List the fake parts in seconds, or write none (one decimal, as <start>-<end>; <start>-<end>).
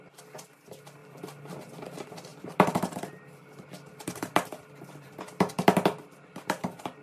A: 1.0-1.6; 2.3-3.4; 3.9-5.5